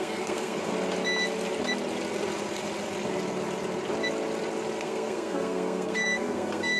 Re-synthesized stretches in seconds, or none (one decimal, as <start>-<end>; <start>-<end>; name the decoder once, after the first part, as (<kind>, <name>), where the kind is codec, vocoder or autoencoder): 0.0-0.7 (codec, SNAC); 4.8-6.8